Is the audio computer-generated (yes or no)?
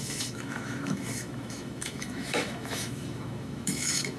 yes